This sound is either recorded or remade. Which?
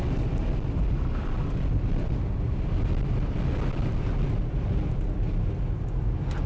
recorded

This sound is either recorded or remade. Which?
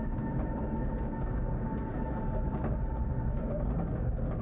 remade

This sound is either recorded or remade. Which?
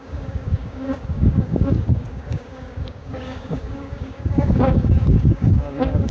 remade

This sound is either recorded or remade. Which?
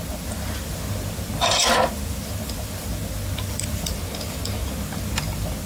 remade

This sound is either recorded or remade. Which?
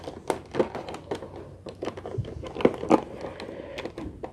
recorded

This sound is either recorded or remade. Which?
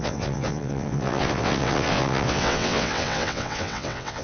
remade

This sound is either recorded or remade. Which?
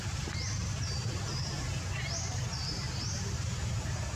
remade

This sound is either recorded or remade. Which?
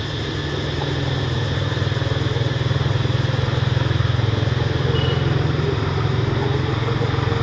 recorded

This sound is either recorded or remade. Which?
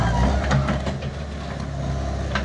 recorded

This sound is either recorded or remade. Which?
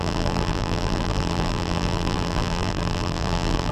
remade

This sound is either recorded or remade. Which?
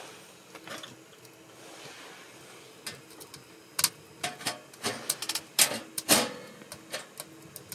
recorded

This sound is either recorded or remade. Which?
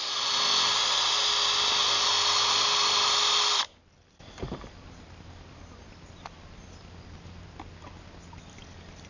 recorded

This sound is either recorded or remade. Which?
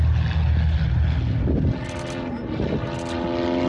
recorded